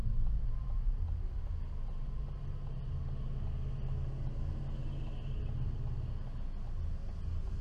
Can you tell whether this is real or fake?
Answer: real